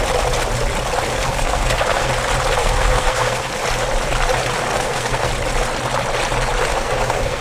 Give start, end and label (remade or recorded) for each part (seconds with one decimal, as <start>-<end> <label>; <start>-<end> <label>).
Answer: 0.0-1.1 recorded; 1.1-2.1 remade; 2.1-2.6 recorded; 2.6-3.5 remade; 3.5-4.7 recorded; 4.7-5.3 remade; 5.3-6.7 recorded; 6.7-7.4 remade